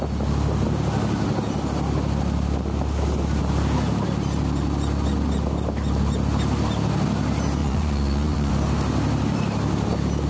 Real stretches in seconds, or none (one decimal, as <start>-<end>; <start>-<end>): 0.0-7.6; 8.5-10.3